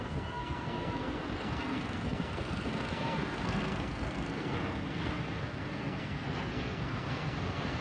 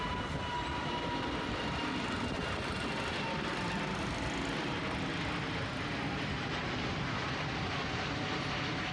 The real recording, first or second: second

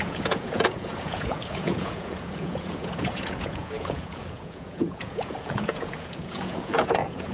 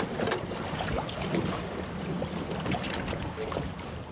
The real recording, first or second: second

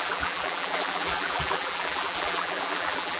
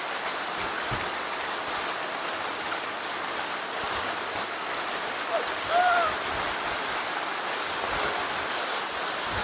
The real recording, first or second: second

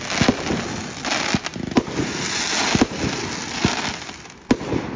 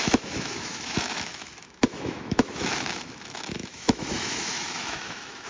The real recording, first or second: first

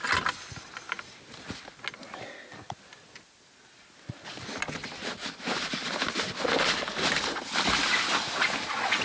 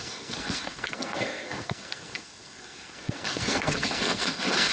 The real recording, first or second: first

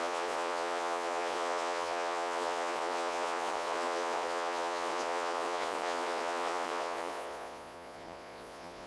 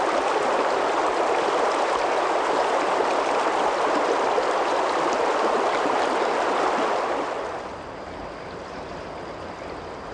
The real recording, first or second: second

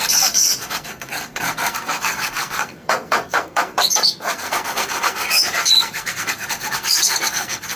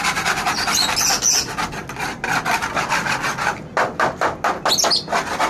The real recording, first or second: second